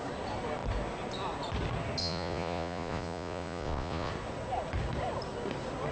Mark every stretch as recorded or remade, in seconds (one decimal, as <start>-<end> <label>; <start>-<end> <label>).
0.0-2.0 recorded; 2.0-4.1 remade; 4.1-5.9 recorded